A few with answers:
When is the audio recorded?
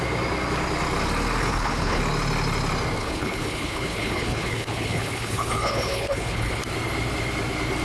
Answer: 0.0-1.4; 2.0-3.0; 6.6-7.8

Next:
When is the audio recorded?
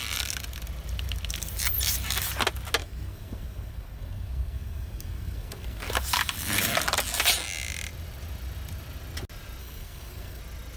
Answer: 0.0-2.8; 5.9-9.6; 10.4-10.8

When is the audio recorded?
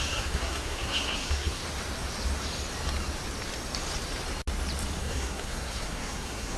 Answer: 1.6-5.0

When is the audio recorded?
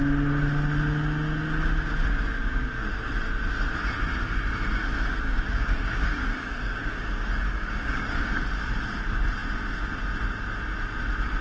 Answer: 0.0-2.4; 3.1-5.1; 8.4-11.4